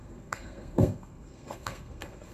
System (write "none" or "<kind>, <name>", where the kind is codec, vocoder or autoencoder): codec, SNAC